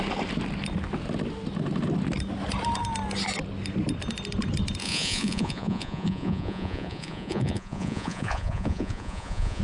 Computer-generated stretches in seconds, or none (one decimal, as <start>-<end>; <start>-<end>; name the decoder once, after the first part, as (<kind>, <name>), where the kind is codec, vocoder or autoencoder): 4.8-9.6 (vocoder, Vocos)